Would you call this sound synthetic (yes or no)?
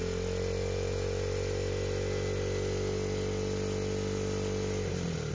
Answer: no